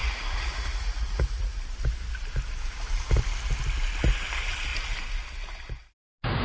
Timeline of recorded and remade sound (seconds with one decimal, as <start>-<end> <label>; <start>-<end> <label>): 0.0-1.6 remade; 1.6-6.4 recorded